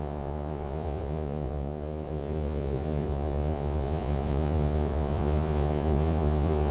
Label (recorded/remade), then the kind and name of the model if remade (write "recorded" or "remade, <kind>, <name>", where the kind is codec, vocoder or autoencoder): remade, vocoder, Vocos